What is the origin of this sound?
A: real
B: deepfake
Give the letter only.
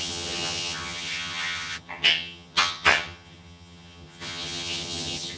B